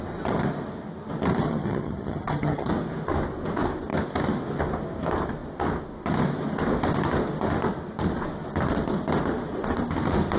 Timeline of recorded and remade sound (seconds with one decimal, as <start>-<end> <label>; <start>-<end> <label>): 0.0-1.4 recorded; 1.4-2.7 remade; 2.7-10.4 recorded